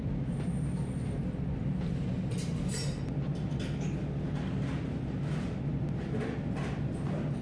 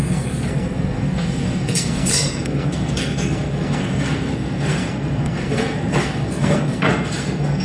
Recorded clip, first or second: first